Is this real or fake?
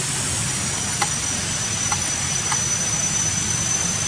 real